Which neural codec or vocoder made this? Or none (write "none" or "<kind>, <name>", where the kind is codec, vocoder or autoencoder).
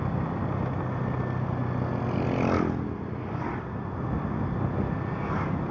none